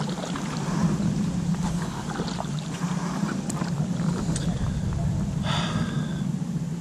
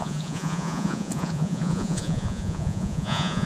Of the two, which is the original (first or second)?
first